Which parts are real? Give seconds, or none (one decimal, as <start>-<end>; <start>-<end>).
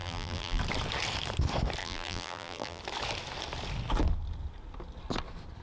0.6-1.8; 2.8-5.6